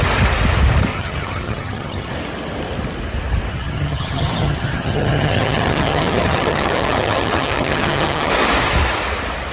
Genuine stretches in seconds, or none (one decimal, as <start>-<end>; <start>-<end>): 0.0-0.9; 2.1-3.5; 8.3-9.5